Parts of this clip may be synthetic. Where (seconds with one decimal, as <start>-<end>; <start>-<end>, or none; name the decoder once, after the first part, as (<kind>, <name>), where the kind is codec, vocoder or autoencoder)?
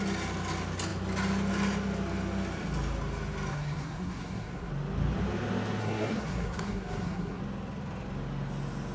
3.5-4.7 (codec, SNAC); 5.8-7.4